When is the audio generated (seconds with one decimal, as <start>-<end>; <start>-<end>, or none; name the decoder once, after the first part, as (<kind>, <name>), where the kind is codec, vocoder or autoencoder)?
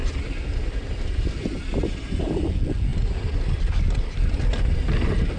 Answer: none